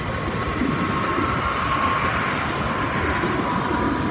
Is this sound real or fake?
real